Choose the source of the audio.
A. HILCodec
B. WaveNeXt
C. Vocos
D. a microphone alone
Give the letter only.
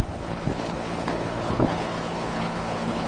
A